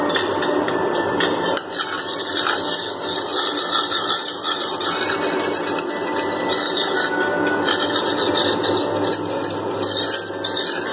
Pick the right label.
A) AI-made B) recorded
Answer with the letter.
B